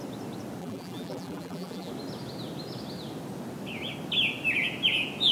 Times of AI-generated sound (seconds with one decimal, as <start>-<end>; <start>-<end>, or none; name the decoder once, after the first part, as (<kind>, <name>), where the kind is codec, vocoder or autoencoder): 0.6-1.9 (vocoder, BigVGAN v2)